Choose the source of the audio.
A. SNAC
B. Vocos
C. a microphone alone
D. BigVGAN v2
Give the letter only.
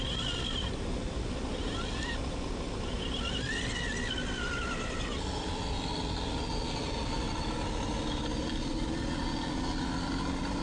C